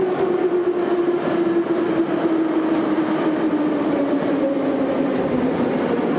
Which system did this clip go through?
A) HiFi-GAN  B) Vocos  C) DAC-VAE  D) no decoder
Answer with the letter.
D